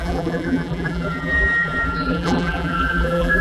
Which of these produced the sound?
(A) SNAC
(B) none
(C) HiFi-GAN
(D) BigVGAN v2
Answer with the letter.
D